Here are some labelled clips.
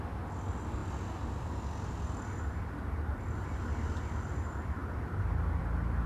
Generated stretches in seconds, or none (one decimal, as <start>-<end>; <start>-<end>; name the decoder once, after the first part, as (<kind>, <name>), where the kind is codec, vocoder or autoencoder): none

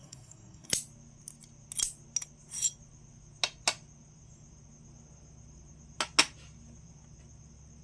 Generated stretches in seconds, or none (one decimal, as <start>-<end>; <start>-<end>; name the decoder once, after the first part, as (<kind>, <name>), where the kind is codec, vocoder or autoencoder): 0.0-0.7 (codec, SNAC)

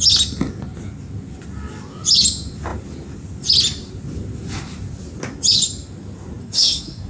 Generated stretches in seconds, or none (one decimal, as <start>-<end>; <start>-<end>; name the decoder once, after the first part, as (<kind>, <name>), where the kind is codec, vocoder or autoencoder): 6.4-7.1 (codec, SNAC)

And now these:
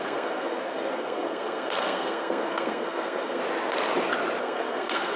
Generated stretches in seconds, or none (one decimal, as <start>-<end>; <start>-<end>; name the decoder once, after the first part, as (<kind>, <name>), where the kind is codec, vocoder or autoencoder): 0.0-3.4 (codec, SNAC); 4.4-5.2